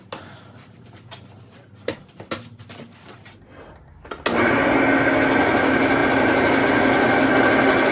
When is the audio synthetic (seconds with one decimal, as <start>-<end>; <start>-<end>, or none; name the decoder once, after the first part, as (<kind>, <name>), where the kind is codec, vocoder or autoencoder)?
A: none